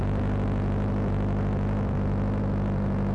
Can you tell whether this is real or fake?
real